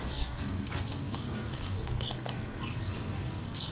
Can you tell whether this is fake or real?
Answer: fake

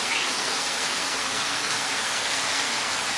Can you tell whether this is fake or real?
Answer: fake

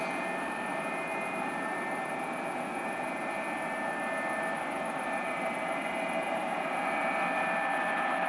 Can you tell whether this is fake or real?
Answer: real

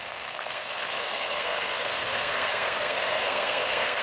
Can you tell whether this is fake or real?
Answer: fake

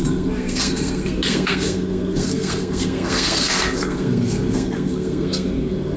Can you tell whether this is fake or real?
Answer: fake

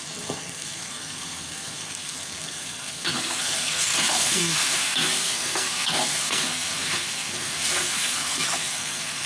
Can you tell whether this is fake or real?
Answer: fake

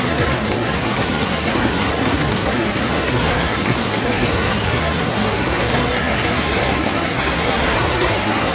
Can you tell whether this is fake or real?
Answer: fake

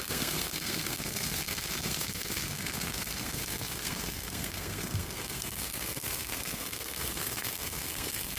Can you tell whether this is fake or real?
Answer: fake